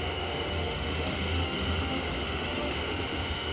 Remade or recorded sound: remade